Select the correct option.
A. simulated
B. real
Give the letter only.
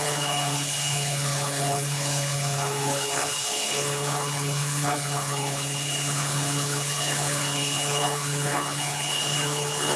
A